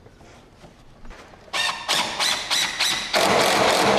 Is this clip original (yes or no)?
yes